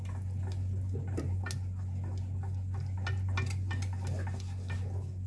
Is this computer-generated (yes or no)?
no